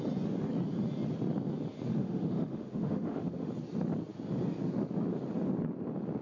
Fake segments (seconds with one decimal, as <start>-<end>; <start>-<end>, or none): 1.9-3.5